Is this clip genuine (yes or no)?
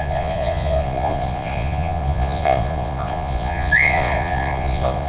no